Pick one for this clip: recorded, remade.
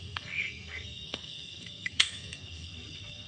remade